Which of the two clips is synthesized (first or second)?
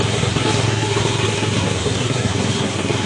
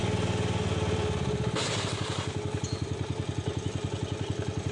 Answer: first